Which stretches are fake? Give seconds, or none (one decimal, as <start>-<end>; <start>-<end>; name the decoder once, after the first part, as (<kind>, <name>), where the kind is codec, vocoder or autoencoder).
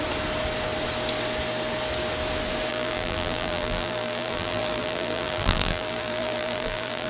2.7-7.1 (vocoder, BigVGAN v2)